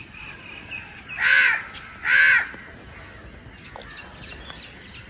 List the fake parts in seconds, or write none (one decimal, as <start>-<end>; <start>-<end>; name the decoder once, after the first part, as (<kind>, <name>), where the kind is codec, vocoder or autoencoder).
none